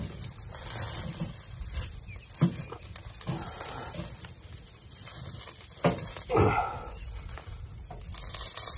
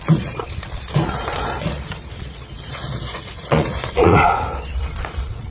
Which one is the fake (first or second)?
second